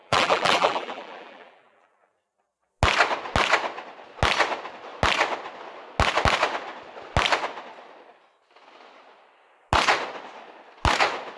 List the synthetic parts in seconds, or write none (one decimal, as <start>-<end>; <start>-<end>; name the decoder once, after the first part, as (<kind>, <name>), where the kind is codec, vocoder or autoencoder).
0.0-2.7 (vocoder, BigVGAN v2)